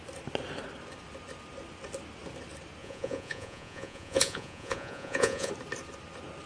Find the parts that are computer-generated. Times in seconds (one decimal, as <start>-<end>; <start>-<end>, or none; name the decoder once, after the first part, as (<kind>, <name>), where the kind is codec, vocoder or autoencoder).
2.8-5.5 (vocoder, Vocos)